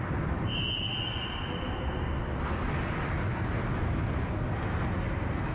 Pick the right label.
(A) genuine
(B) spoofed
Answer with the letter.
A